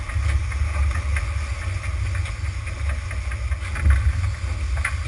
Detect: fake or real real